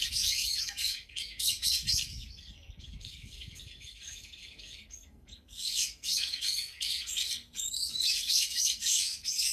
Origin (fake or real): fake